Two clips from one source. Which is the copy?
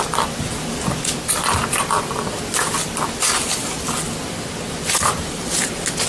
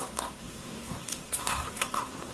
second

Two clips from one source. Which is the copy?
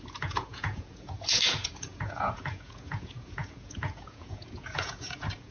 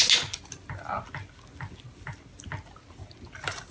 first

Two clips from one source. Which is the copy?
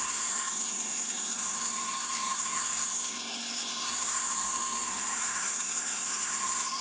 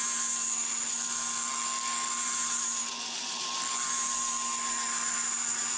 first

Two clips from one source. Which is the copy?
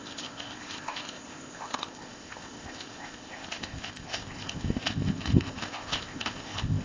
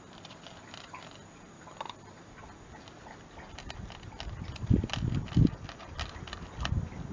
first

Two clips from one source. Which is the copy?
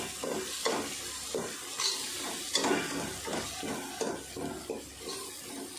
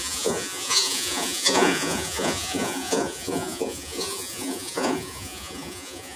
second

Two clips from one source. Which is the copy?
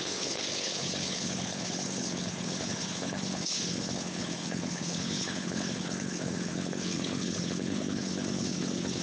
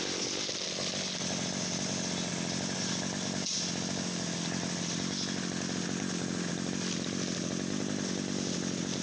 first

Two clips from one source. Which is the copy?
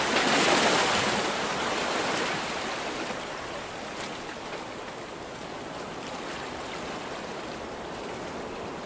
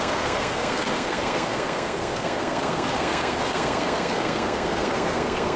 second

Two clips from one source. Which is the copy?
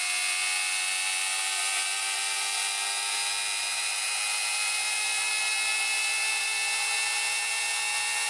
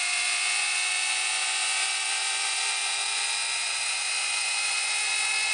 second